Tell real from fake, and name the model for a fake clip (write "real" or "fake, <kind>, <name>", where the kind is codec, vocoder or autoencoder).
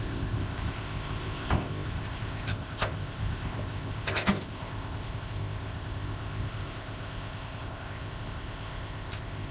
fake, codec, ZipCodec